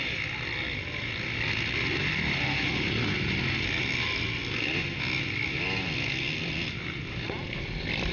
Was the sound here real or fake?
real